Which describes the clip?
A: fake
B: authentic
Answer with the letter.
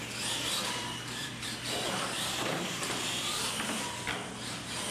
A